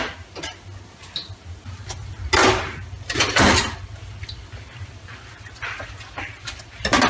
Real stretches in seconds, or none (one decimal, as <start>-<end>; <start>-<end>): 0.0-2.4